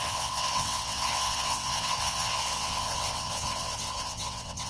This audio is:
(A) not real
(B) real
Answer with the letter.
A